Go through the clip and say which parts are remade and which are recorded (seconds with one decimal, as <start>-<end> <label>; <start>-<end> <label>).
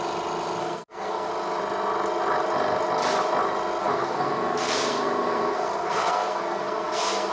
0.0-0.6 recorded; 0.6-1.3 remade; 1.3-3.8 recorded; 3.8-7.3 remade